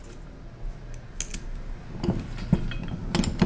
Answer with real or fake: real